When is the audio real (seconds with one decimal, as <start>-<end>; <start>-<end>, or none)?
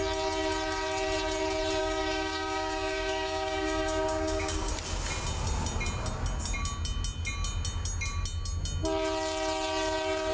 0.0-1.8; 4.7-10.3